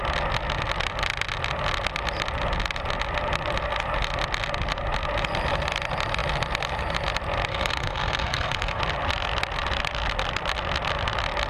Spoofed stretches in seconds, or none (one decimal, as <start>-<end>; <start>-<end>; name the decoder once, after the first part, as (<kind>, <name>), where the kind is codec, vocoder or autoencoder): 7.5-8.8 (codec, SNAC)